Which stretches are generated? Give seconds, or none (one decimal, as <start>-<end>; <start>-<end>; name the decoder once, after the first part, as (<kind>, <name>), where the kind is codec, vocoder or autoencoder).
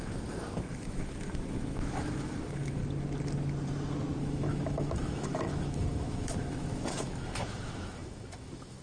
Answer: 0.0-2.8 (autoencoder, DAC-VAE); 4.2-8.8